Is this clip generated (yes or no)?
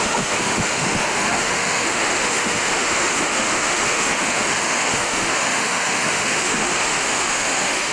yes